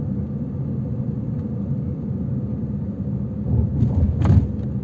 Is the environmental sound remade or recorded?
recorded